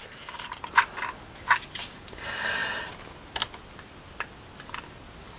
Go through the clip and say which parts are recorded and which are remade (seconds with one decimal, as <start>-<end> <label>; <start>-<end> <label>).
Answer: 0.0-5.4 recorded